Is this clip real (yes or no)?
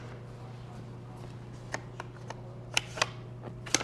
yes